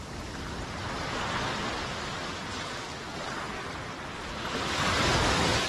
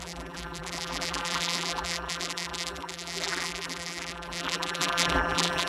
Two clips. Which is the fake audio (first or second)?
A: second